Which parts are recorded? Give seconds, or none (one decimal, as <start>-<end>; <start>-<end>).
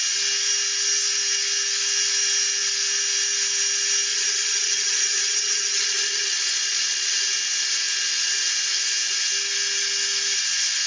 0.0-4.1; 7.2-10.9